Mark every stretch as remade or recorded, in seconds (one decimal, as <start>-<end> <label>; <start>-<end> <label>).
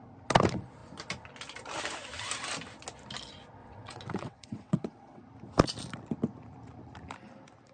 0.0-3.6 recorded; 3.6-5.2 remade; 5.2-7.7 recorded